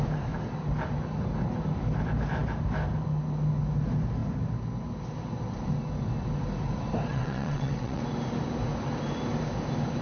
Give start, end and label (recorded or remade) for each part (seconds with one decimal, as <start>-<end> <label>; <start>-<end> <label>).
0.0-7.1 recorded; 7.1-8.0 remade; 8.0-10.0 recorded